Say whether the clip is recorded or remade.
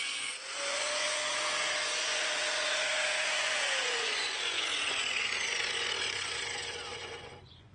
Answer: remade